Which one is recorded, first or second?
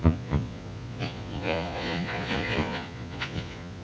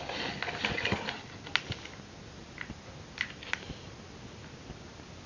second